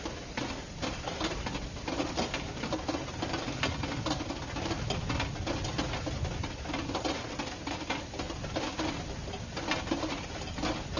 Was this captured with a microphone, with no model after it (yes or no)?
yes